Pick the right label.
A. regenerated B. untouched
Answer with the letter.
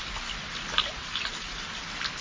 B